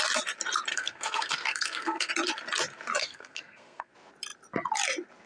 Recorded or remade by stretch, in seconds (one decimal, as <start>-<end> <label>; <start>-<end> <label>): 0.0-0.7 recorded; 0.7-2.1 remade; 2.1-3.0 recorded; 3.0-3.9 remade; 3.9-5.3 recorded